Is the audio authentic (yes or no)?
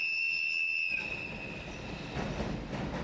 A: yes